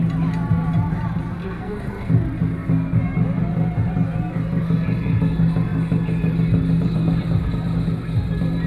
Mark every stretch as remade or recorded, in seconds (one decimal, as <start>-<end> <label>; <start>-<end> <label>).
0.0-1.4 recorded; 1.4-2.1 remade; 2.1-8.7 recorded